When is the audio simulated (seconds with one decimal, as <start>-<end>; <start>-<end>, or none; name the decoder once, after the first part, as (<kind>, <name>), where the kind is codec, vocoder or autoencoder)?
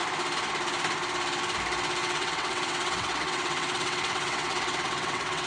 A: 2.0-5.5 (vocoder, WaveNeXt)